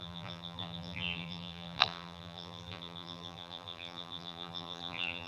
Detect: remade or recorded remade